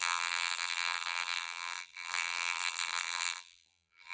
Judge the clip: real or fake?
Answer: fake